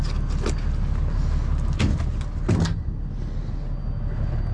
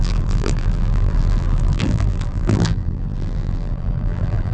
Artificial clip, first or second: second